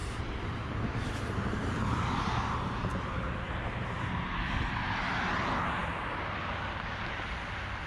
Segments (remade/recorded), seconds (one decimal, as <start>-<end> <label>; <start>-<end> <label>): 0.0-1.4 remade; 1.4-7.9 recorded